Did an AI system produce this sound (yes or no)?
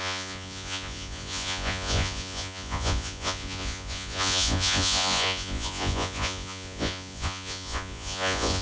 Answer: yes